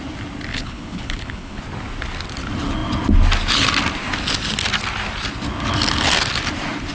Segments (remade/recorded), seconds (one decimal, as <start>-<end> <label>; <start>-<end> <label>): 0.0-0.5 recorded; 0.5-1.6 remade; 1.6-6.9 recorded